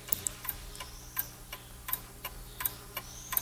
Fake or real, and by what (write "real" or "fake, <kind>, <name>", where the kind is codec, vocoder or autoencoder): real